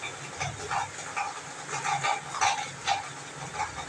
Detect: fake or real real